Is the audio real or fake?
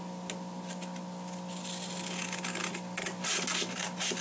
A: real